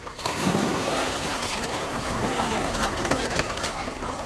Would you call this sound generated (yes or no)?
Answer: yes